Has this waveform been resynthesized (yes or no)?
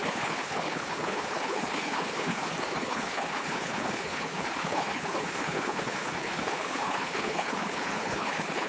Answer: yes